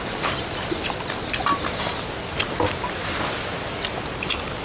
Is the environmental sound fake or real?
real